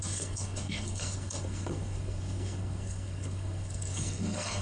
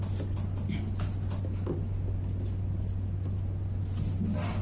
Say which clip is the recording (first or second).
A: second